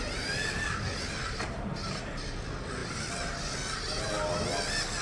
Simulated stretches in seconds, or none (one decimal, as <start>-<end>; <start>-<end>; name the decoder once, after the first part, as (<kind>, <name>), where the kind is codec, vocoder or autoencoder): none